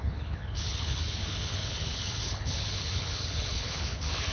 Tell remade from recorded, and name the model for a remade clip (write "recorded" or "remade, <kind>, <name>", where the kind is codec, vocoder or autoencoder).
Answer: remade, codec, HILCodec